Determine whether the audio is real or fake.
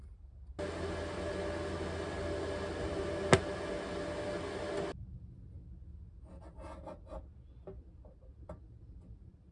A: real